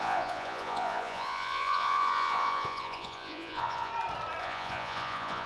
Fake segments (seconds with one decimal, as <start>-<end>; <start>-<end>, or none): 0.0-3.9; 4.4-5.5